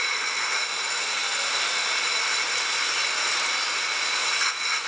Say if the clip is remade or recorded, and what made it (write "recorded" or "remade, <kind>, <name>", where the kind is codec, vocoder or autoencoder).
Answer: recorded